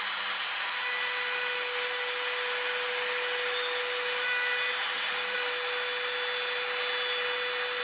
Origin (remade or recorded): recorded